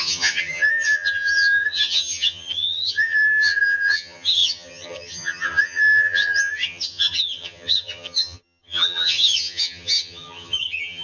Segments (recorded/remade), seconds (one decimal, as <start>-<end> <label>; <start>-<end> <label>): 0.0-11.0 remade